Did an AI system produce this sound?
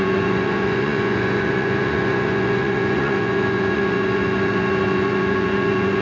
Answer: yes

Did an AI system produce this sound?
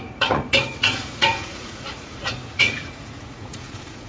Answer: yes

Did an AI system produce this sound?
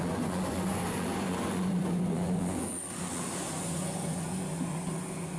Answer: yes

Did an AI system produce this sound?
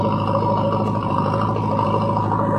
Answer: yes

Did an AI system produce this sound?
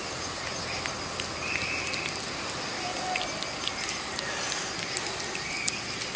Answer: no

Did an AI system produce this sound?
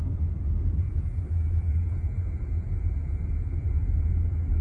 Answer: yes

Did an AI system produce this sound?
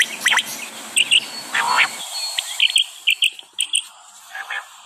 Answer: no